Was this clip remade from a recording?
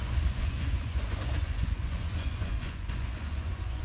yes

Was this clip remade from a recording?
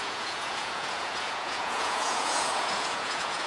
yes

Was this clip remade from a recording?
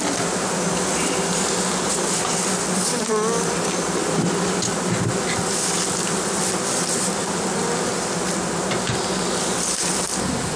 no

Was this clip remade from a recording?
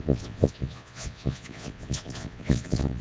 yes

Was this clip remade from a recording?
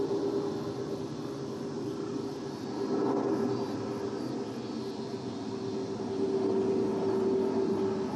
no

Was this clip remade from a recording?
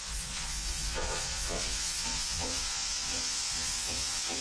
yes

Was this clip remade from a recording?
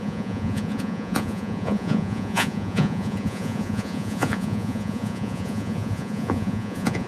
yes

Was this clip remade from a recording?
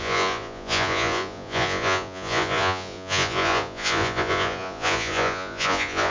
yes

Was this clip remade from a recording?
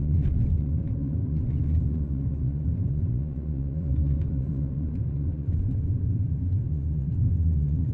yes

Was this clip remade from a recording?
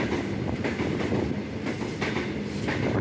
no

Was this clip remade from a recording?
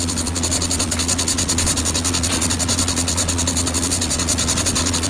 yes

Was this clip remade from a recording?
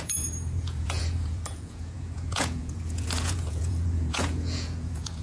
yes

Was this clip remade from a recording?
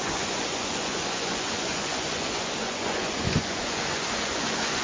yes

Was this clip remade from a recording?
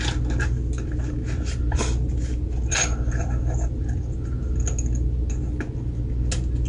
no